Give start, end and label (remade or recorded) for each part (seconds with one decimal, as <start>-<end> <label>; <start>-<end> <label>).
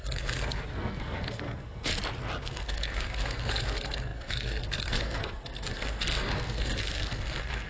0.0-1.9 remade; 1.9-2.4 recorded; 2.4-7.7 remade